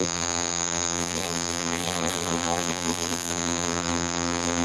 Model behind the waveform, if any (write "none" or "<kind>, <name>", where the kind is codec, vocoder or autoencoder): vocoder, BigVGAN v2